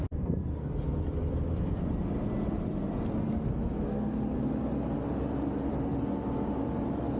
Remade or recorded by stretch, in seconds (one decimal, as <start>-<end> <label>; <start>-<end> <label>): 0.0-7.2 recorded